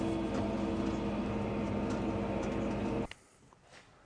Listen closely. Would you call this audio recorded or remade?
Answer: recorded